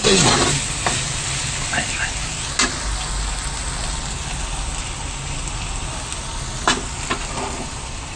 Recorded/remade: recorded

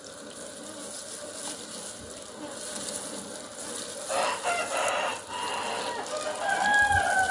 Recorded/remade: recorded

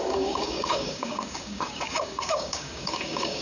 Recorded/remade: remade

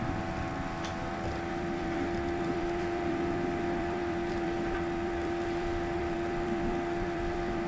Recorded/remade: remade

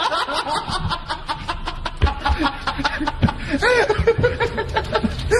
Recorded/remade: recorded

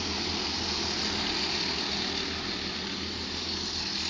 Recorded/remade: recorded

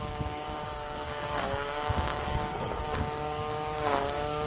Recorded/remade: remade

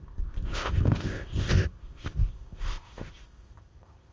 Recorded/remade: remade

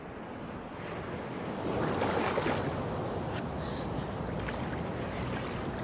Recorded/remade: recorded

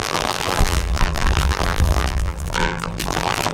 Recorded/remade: remade